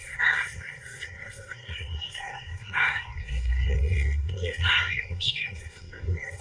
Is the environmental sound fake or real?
fake